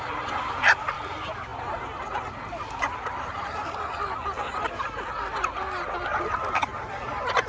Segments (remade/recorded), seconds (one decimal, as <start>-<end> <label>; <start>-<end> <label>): 0.0-7.5 recorded